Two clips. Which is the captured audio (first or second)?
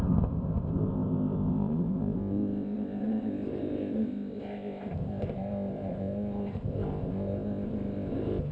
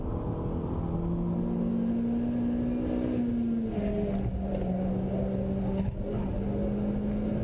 second